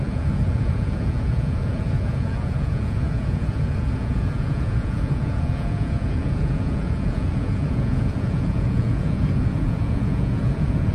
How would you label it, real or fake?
fake